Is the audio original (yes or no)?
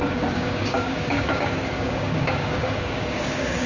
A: no